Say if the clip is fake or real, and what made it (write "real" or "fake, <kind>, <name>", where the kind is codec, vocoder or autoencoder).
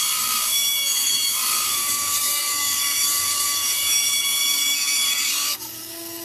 fake, codec, DAC